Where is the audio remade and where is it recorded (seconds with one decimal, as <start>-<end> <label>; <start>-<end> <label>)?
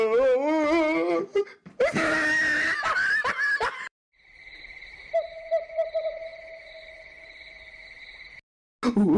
0.0-1.3 recorded; 1.3-4.6 remade; 4.6-9.2 recorded